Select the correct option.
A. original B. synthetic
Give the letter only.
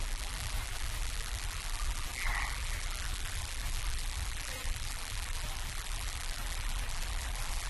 B